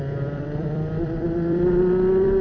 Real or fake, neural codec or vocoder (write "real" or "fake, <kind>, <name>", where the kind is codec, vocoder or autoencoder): fake, vocoder, BigVGAN v2